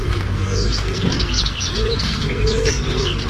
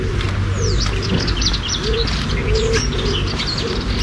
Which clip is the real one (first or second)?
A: second